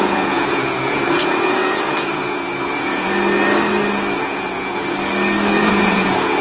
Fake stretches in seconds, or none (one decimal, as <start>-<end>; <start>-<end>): 0.0-3.1; 4.2-4.7; 5.6-6.4